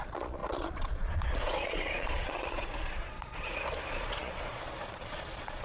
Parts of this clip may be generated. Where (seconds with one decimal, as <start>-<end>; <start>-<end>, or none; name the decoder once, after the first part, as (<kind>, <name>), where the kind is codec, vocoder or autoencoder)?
0.0-5.6 (vocoder, Vocos)